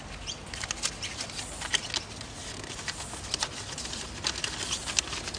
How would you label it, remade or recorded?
recorded